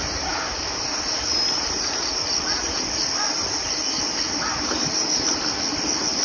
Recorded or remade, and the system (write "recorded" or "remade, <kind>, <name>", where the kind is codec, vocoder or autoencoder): recorded